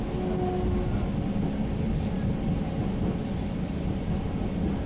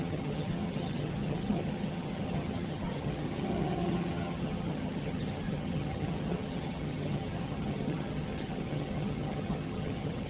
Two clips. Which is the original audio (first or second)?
first